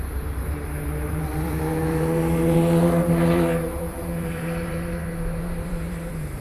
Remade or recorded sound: remade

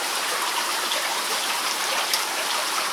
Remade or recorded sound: remade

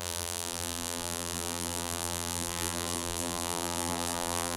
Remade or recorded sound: remade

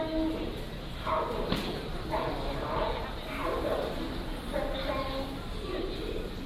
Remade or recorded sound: recorded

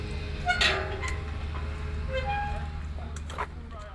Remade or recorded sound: recorded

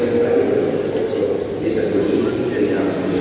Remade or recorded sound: recorded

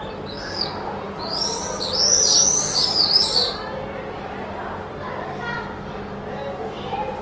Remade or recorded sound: recorded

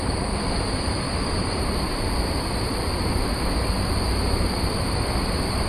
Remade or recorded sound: remade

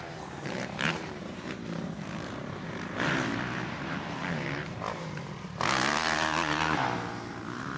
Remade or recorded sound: remade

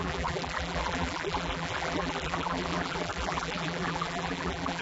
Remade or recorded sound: remade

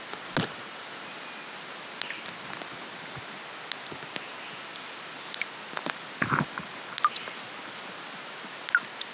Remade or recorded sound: recorded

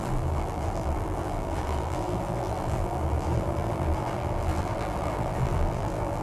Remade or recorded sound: remade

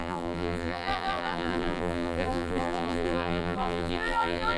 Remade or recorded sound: remade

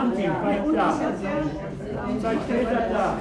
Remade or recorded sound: remade